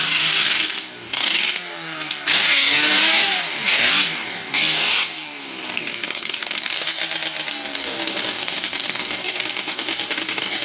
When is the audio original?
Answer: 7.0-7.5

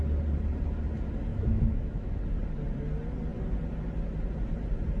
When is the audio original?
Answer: 0.0-1.3; 2.1-5.0

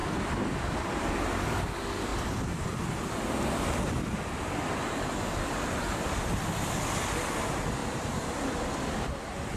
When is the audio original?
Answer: 0.8-2.1; 6.8-7.8; 8.8-9.6

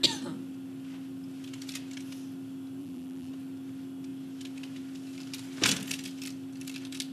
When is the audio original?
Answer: 0.0-2.8; 3.3-7.1

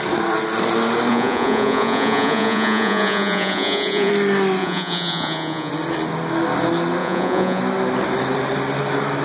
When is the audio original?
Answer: 0.0-1.1; 4.1-4.6; 5.7-7.0; 7.6-9.2

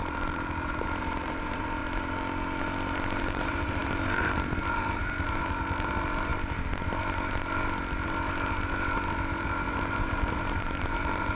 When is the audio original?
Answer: 1.8-3.2; 6.3-9.4